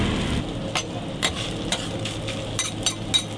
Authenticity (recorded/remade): recorded